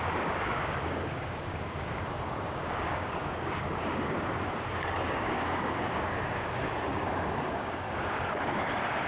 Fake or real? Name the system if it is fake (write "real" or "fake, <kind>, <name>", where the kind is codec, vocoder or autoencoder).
fake, codec, DAC